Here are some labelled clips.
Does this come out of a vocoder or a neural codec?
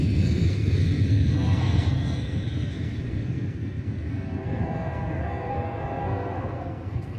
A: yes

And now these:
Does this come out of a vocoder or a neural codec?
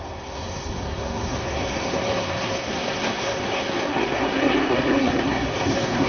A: yes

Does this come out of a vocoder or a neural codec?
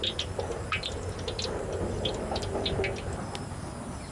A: no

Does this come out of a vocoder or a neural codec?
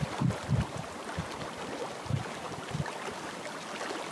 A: no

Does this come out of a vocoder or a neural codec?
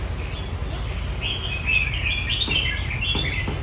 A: no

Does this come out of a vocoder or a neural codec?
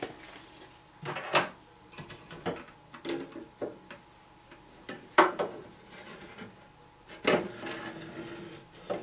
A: no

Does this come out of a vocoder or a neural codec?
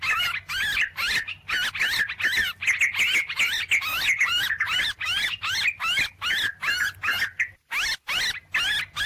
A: no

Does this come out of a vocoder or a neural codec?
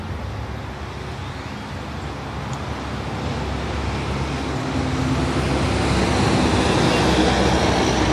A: no